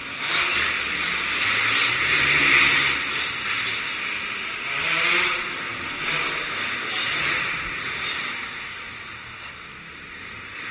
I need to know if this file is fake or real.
real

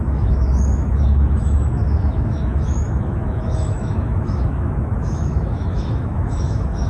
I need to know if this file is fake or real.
fake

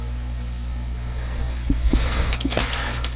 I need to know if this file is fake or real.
fake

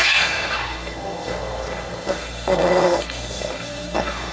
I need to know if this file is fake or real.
fake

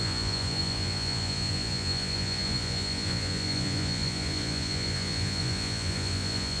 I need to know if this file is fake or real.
fake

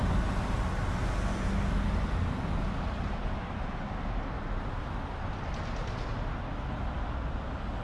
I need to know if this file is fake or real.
real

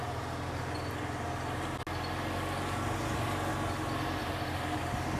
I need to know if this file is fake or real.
real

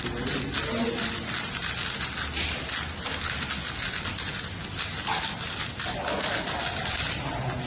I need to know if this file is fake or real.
real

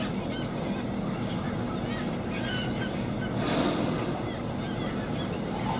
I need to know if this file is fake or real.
real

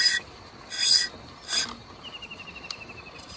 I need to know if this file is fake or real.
real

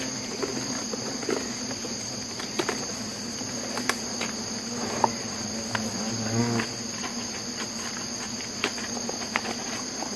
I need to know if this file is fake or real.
real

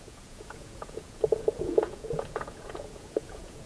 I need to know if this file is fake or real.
fake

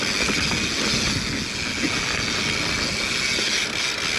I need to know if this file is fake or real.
real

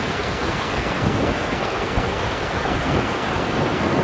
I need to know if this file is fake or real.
fake